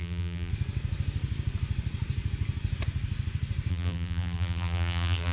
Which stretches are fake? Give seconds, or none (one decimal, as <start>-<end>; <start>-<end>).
0.0-0.5; 3.7-5.3